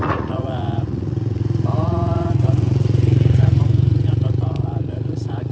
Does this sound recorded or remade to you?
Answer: remade